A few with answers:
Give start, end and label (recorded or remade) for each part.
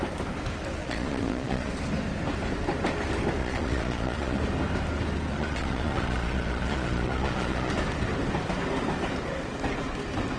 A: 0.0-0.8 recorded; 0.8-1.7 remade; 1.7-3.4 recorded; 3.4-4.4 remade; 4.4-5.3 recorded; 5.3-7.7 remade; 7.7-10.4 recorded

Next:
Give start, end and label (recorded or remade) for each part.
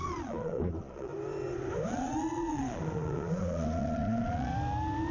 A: 0.0-1.1 remade; 1.1-1.9 recorded; 1.9-4.5 remade; 4.5-5.1 recorded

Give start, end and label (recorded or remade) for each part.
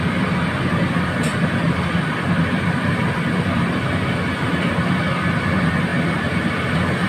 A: 0.0-7.1 recorded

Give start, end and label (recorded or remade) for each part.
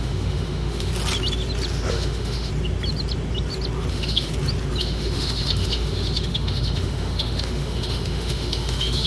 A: 0.0-0.9 remade; 0.9-1.9 recorded; 1.9-2.5 remade; 2.5-3.9 recorded; 3.9-4.3 remade; 4.3-4.8 recorded; 4.8-9.1 remade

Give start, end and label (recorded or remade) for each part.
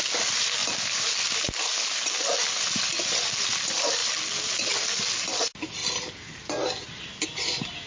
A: 0.0-7.9 recorded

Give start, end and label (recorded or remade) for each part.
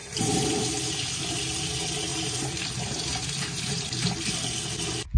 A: 0.0-0.5 remade; 0.5-2.1 recorded; 2.1-3.8 remade; 3.8-5.2 recorded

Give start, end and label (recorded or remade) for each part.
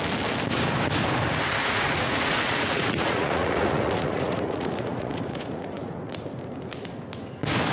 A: 0.0-1.6 recorded; 1.6-6.2 remade; 6.2-7.7 recorded